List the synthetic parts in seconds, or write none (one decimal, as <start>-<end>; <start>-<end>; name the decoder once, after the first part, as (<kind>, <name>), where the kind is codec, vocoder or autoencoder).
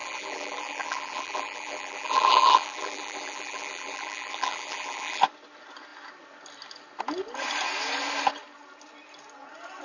0.0-5.2 (vocoder, BigVGAN v2)